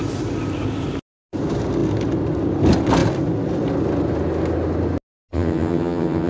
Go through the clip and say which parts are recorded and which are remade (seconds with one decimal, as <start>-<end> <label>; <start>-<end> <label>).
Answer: 0.0-5.3 recorded; 5.3-6.3 remade